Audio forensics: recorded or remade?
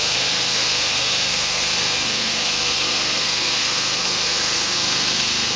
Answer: remade